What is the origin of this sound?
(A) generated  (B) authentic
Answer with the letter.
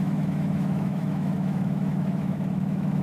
A